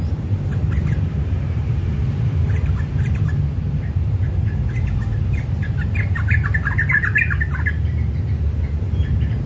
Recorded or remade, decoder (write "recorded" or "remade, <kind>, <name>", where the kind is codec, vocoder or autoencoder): remade, vocoder, BigVGAN v2